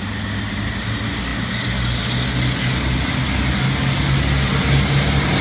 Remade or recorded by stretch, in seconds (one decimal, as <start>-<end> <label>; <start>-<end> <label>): 0.0-5.4 recorded